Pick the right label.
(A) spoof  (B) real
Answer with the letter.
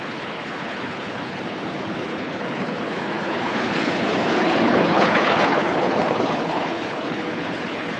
A